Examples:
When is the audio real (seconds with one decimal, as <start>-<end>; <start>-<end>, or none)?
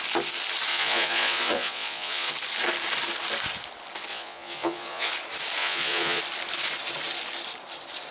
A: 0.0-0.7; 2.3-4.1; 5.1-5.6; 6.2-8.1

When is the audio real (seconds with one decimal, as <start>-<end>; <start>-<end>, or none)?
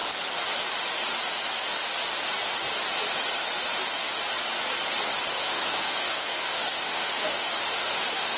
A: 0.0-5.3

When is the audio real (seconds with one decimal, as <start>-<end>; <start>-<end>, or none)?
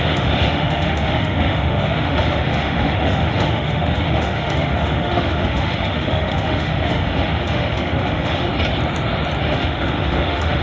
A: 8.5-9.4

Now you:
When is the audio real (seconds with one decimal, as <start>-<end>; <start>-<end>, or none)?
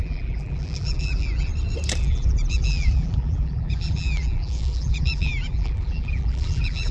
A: 1.5-2.0